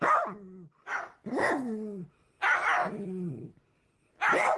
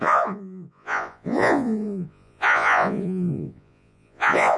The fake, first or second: second